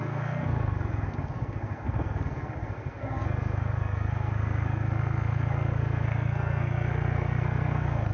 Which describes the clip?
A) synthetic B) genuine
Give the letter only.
A